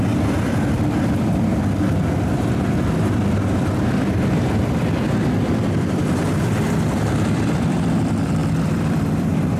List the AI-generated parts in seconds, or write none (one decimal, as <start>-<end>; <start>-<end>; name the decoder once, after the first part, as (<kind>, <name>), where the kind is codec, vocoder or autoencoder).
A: 0.0-9.6 (vocoder, BigVGAN v2)